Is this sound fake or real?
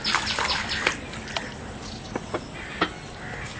real